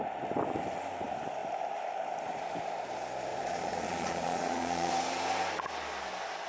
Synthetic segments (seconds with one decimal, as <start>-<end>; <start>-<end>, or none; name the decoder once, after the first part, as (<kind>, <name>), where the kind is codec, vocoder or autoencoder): 3.3-4.9 (vocoder, Vocos)